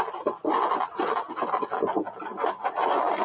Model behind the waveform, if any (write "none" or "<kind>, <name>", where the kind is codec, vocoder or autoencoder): none